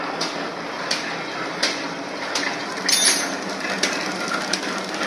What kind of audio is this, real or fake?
real